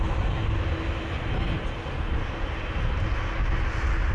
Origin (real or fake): real